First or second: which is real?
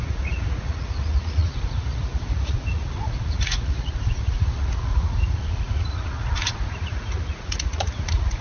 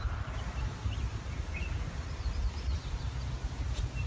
second